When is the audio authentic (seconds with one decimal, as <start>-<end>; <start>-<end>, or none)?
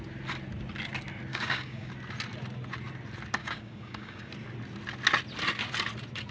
0.0-1.3; 1.9-3.4; 4.3-6.3